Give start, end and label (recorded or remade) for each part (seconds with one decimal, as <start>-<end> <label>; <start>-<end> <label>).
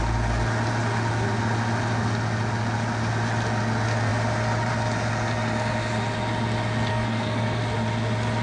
0.0-6.9 recorded; 6.9-7.6 remade; 7.6-8.4 recorded